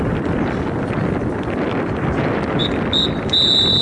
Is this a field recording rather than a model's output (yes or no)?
no